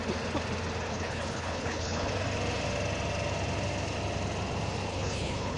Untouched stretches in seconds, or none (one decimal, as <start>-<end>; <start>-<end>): 0.0-0.9; 2.1-4.9